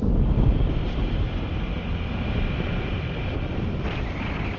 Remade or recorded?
remade